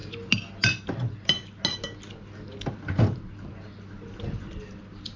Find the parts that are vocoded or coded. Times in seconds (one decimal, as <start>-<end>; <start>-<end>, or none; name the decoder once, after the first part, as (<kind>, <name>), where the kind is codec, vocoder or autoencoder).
none